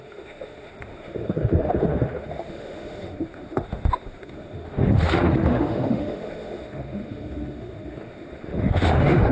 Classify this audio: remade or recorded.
remade